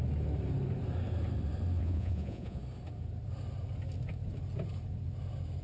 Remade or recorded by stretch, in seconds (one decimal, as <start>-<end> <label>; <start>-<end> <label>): 0.0-1.8 recorded; 1.8-2.6 remade; 2.6-5.6 recorded